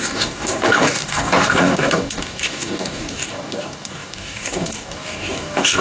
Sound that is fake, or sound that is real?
fake